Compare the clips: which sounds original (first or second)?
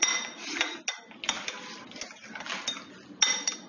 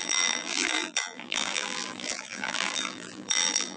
first